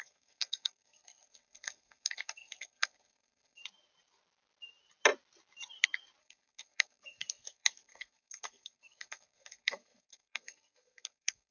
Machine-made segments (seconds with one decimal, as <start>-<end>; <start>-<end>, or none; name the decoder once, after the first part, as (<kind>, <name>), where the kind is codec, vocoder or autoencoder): 0.0-3.6 (codec, SNAC); 6.2-11.5